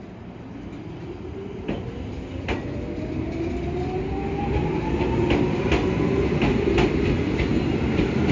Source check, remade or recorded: recorded